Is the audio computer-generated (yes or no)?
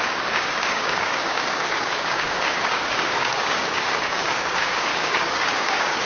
yes